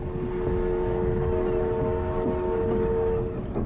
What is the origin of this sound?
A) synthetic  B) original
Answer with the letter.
B